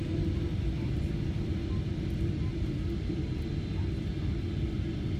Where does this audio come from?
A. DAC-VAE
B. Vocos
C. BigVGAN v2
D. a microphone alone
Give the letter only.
D